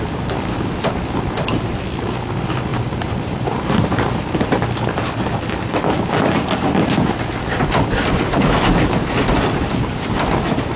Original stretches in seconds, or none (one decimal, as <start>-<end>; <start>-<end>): 0.0-2.7; 4.2-10.8